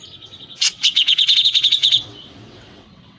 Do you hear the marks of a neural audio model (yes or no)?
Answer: yes